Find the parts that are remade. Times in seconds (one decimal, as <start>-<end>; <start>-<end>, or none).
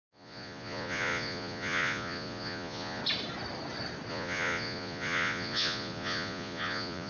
0.0-3.0; 4.1-7.1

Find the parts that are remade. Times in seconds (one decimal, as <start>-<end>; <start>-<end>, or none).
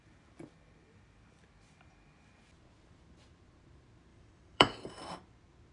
4.1-5.0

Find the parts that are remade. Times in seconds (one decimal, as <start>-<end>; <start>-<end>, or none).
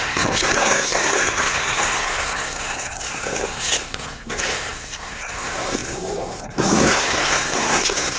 0.0-8.2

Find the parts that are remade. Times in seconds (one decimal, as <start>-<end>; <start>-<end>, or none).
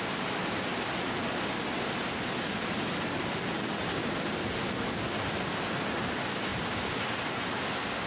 none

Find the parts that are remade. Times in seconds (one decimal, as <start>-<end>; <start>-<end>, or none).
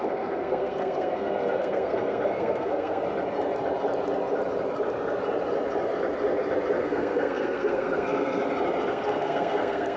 0.0-3.0; 6.8-8.4; 8.9-10.0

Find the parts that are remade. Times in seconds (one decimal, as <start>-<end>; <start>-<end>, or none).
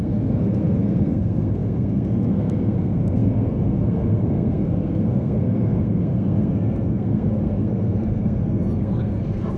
0.0-9.6